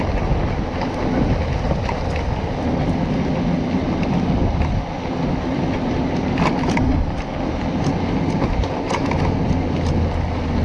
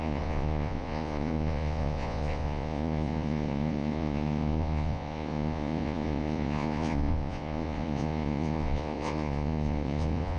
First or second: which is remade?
second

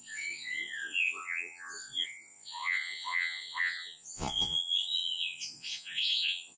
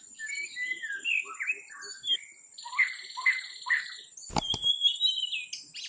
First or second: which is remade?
first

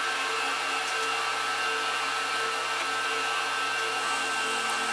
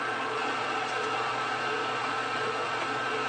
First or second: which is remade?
second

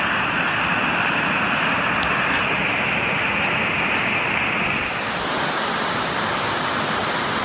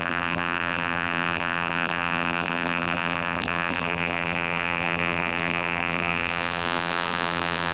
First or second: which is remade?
second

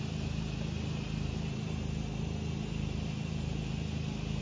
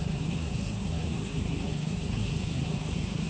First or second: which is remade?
second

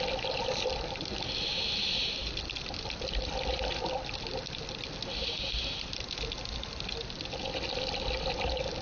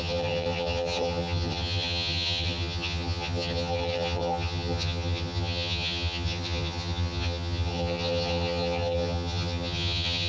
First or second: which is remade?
second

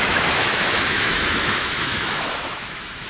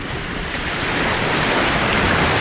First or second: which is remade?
first